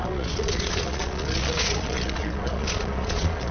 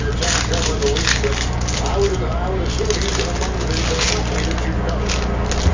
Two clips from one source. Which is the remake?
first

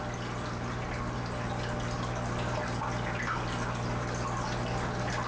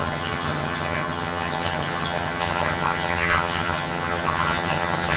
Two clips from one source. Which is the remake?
second